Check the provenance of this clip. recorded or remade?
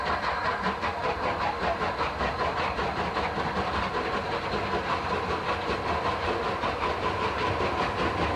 recorded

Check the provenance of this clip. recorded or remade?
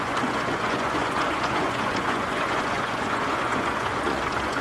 remade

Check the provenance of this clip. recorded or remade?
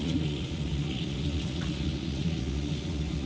remade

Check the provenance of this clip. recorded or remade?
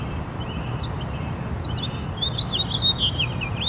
recorded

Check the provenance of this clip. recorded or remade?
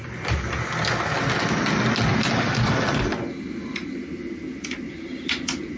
recorded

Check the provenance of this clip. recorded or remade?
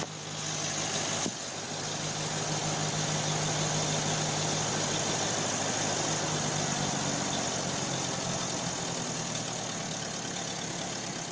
recorded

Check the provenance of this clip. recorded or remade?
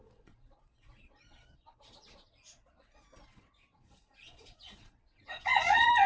remade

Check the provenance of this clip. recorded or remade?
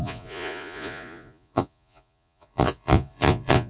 remade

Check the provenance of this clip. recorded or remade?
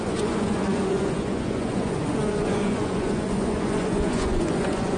remade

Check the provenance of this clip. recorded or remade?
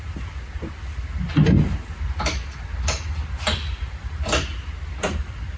recorded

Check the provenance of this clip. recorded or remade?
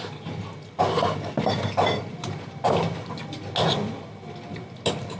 recorded